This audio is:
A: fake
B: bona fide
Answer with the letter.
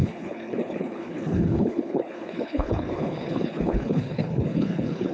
A